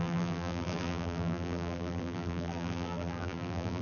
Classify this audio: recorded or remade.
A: remade